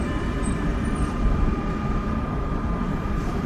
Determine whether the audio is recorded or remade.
remade